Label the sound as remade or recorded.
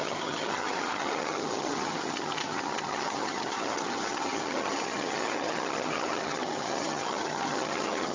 remade